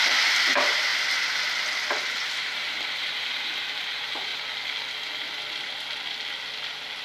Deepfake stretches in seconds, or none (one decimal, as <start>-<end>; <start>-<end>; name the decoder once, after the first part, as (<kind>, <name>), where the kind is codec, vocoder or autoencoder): 0.0-0.9 (vocoder, BigVGAN v2); 2.1-4.3